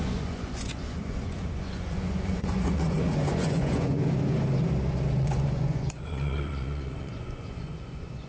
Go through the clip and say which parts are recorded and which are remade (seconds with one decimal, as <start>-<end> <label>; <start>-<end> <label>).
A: 0.0-4.0 remade; 4.0-5.1 recorded; 5.1-8.3 remade